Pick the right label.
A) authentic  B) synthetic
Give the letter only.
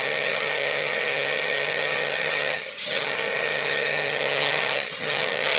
B